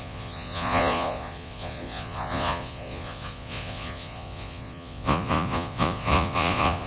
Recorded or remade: remade